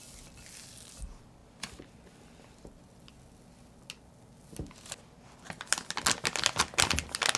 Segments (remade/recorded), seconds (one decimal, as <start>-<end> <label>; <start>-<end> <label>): 0.0-7.4 recorded